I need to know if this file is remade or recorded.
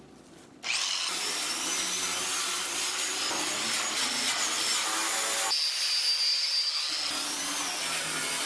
recorded